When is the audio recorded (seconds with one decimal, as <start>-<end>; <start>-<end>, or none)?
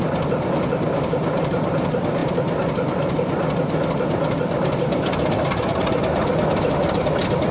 0.0-7.5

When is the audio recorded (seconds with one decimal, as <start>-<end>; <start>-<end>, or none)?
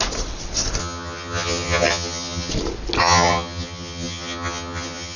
0.0-0.8; 2.5-3.0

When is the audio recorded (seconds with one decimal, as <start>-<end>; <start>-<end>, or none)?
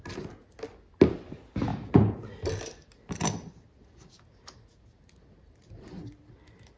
0.0-6.8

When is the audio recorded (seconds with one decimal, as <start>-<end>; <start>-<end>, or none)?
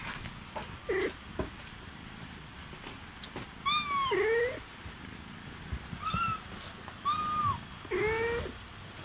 0.0-9.0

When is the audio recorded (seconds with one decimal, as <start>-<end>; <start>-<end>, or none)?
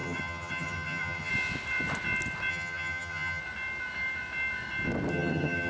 1.3-2.5; 3.4-5.1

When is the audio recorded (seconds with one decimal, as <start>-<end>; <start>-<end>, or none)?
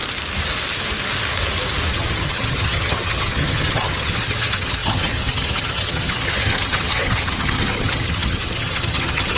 0.0-1.9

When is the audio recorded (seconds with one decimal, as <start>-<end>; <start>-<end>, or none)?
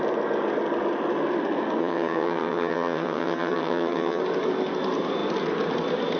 0.0-1.8; 4.2-6.2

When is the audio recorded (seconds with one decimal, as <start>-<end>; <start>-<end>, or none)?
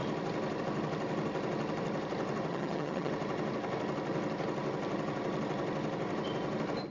0.0-2.5; 3.1-6.9